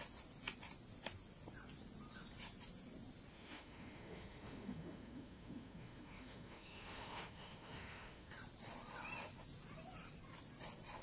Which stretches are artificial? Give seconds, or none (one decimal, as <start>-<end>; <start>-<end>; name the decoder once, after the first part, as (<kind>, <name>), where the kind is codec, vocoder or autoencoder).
3.3-8.3 (autoencoder, DAC-VAE)

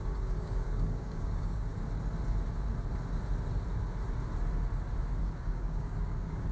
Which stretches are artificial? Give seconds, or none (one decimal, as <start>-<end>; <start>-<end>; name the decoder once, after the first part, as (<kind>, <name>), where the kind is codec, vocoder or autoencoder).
0.0-1.7 (codec, DAC); 5.2-6.5